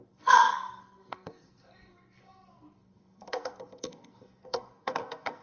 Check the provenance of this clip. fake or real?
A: fake